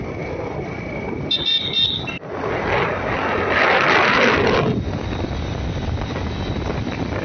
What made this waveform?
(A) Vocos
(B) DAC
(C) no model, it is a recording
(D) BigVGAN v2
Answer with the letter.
C